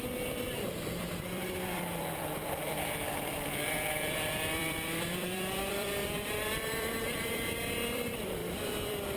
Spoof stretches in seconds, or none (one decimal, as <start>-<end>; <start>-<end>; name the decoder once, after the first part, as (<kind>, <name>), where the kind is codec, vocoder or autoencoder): 0.0-9.2 (vocoder, BigVGAN v2)

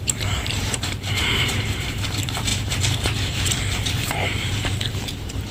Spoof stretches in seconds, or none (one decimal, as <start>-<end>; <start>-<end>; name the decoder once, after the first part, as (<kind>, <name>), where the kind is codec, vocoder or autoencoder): 0.0-5.5 (vocoder, BigVGAN v2)

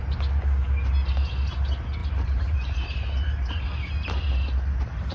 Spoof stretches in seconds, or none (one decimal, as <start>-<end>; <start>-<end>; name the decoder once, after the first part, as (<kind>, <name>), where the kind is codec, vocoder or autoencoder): 2.0-4.2 (vocoder, BigVGAN v2)

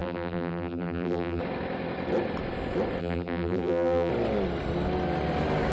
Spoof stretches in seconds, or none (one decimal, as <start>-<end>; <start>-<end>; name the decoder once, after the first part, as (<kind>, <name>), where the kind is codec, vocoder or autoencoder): 0.0-1.4 (vocoder, BigVGAN v2); 3.0-4.1